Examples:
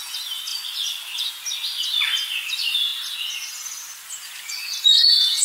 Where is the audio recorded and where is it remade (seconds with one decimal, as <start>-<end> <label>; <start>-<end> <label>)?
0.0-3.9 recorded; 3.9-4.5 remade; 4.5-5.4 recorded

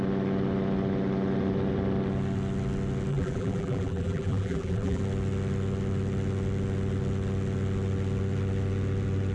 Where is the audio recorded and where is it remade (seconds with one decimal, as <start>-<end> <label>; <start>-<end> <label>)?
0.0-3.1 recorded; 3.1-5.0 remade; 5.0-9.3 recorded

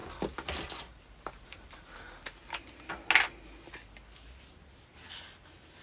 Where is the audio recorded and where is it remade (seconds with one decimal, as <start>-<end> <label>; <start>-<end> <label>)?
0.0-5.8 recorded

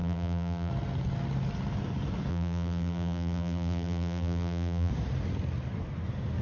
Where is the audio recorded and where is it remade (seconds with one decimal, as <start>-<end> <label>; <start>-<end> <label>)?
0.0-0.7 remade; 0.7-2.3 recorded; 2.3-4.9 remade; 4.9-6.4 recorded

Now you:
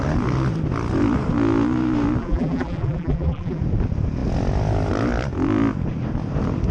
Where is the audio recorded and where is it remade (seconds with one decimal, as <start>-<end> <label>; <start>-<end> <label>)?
0.0-2.2 recorded; 2.2-3.6 remade; 3.6-6.7 recorded

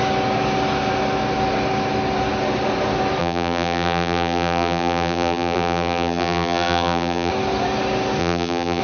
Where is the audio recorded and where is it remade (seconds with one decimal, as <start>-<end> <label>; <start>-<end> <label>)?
0.0-3.2 recorded; 3.2-7.3 remade; 7.3-8.2 recorded; 8.2-8.8 remade

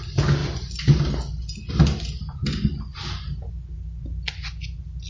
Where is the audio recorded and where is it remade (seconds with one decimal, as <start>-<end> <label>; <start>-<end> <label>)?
0.0-5.1 recorded

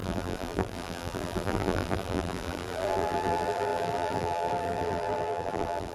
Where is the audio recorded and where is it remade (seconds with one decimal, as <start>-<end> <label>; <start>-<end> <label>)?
0.0-5.9 remade